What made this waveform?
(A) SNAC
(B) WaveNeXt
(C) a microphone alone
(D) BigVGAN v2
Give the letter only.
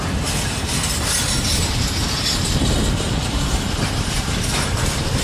C